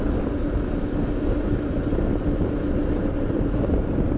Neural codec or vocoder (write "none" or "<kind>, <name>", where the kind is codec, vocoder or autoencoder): none